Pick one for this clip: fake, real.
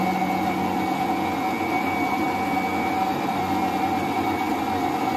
real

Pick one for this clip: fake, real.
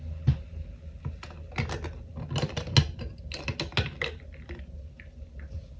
real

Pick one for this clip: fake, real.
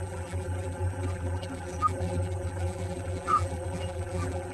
fake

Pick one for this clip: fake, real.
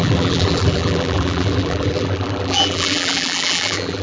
fake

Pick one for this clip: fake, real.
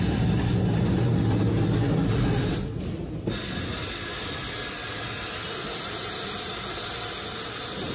real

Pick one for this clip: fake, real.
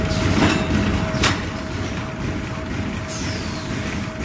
real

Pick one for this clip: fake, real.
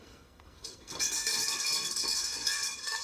fake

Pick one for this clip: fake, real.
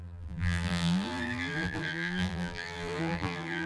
fake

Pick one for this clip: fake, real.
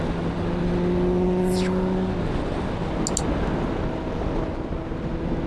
real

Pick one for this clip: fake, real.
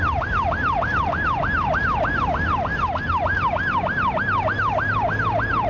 real